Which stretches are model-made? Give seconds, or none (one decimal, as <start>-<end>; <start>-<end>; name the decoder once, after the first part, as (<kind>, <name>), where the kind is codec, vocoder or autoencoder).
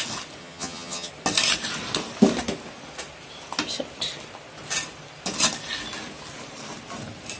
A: 0.4-1.1 (vocoder, HiFi-GAN)